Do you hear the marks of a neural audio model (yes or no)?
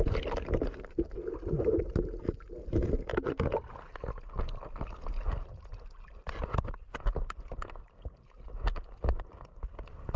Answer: no